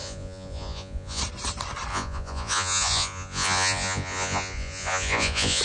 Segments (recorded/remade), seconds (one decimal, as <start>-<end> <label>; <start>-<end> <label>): 0.0-1.2 remade; 1.2-1.9 recorded; 1.9-5.6 remade

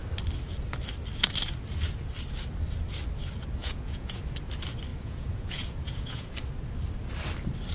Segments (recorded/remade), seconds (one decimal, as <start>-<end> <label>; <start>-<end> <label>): 0.0-3.6 recorded; 3.6-4.2 remade; 4.2-4.9 recorded; 4.9-6.3 remade; 6.3-7.7 recorded

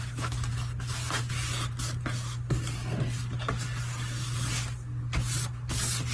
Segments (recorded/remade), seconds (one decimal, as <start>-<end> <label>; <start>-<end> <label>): 0.0-6.1 recorded

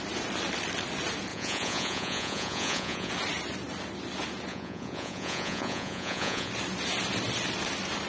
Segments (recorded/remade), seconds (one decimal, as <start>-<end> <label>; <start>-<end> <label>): 0.0-1.3 recorded; 1.3-3.1 remade; 3.1-4.5 recorded; 4.5-6.5 remade; 6.5-8.1 recorded

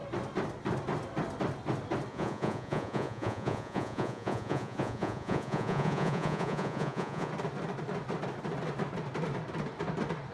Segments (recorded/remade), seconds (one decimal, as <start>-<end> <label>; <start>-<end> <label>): 0.0-2.1 recorded; 2.1-7.3 remade; 7.3-10.3 recorded